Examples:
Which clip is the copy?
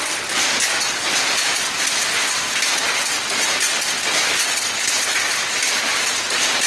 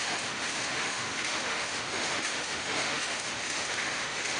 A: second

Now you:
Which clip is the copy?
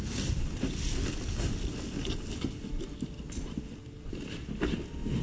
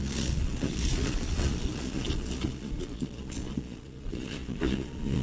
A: second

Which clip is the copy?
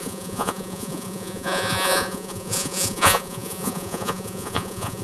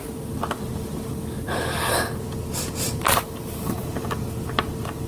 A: first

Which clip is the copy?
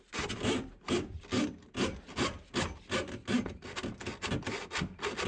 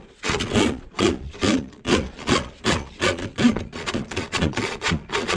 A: second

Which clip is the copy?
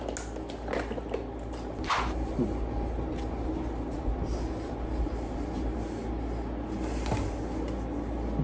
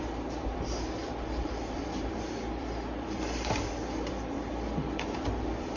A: second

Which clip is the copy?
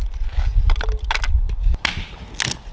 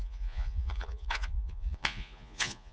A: second